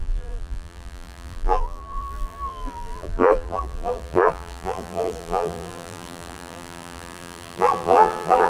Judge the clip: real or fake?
fake